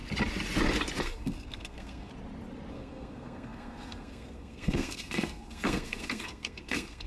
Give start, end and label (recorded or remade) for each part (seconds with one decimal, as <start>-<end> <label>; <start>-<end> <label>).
0.0-1.0 recorded; 1.0-2.1 remade; 2.1-2.7 recorded; 2.7-7.1 remade